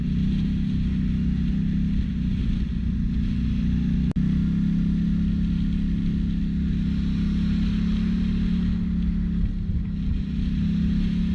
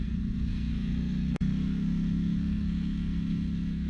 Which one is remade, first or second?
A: second